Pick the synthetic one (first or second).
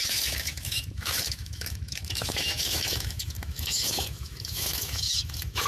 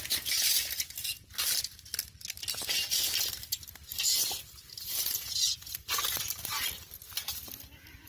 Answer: first